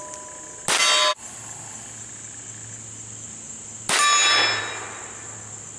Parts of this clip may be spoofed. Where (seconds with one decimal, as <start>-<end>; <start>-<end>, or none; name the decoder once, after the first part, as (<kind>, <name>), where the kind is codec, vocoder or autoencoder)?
none